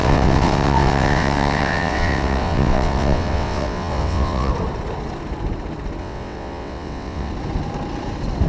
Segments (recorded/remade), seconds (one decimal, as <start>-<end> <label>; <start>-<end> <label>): 0.0-4.5 remade; 4.5-6.0 recorded; 6.0-7.3 remade; 7.3-8.5 recorded